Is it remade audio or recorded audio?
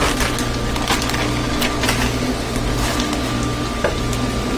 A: recorded